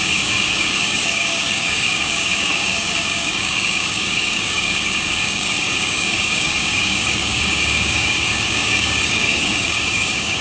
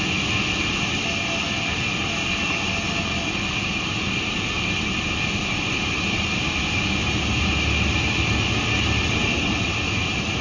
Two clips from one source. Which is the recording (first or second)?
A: second